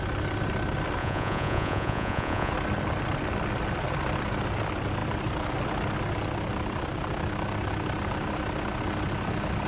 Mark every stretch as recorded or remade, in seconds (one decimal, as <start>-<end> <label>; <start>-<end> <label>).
0.0-1.0 recorded; 1.0-2.5 remade; 2.5-9.7 recorded